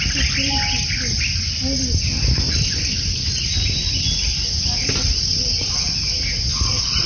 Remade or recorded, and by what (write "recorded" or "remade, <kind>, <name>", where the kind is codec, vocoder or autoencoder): recorded